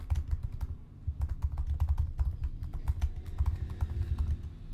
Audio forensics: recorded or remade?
recorded